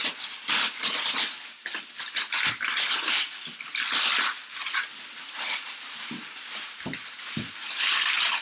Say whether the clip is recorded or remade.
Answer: recorded